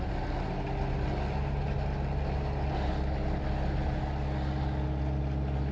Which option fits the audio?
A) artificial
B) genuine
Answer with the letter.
B